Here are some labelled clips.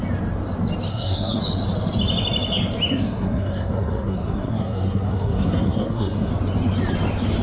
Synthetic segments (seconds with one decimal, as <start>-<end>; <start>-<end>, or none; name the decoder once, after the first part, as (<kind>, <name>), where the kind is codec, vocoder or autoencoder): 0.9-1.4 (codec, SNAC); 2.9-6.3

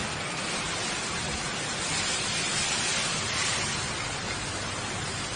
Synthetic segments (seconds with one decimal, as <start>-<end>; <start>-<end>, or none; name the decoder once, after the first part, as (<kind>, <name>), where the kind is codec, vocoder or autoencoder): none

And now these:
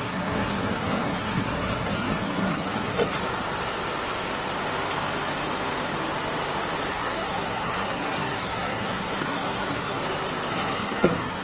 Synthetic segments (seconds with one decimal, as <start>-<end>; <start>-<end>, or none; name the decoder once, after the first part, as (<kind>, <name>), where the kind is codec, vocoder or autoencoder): 0.0-3.2 (codec, SNAC); 6.9-10.0; 10.5-11.4